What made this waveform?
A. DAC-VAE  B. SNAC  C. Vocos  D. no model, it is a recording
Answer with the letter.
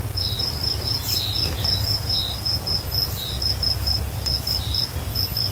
D